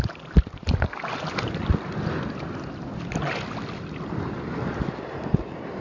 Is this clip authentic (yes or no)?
yes